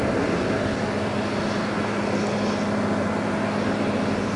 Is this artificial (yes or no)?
no